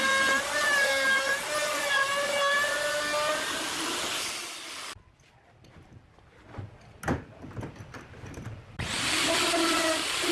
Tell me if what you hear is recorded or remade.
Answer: recorded